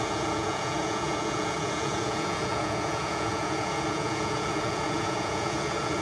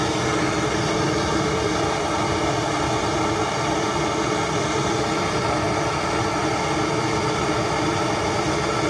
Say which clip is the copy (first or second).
first